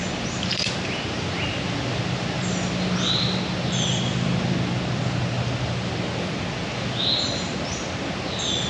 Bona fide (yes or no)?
yes